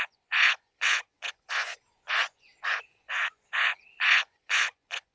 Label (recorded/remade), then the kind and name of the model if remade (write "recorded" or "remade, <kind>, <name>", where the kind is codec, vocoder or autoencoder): remade, vocoder, Vocos